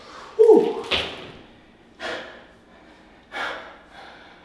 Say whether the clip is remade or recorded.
recorded